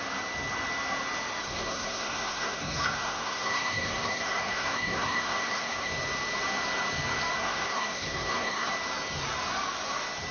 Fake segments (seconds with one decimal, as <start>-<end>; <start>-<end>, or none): 1.4-5.9; 7.4-8.7

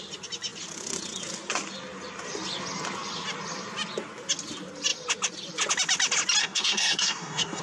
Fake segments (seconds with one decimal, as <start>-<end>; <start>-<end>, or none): 6.4-7.6

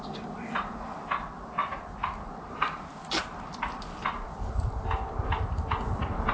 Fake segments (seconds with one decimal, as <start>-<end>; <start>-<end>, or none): none

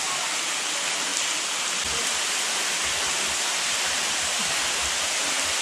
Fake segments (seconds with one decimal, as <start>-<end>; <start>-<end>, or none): none